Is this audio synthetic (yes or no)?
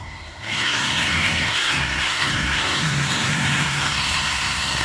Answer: yes